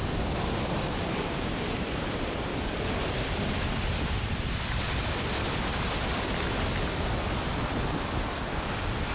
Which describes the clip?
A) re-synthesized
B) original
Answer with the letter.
A